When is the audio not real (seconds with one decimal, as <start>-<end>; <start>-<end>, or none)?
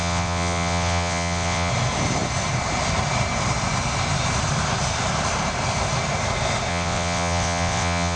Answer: 0.0-1.7; 6.7-8.2